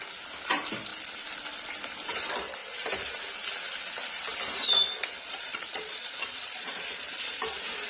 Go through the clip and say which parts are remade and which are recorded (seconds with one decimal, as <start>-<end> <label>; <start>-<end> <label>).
0.0-5.1 recorded; 5.1-7.4 remade; 7.4-7.9 recorded